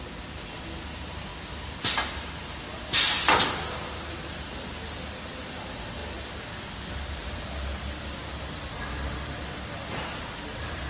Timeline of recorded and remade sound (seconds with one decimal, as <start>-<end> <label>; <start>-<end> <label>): 0.0-10.9 recorded